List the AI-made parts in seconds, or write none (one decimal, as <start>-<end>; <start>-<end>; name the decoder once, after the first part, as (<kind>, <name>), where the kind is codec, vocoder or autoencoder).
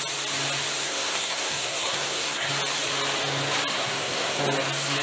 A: 0.8-2.5 (codec, SNAC); 3.7-4.4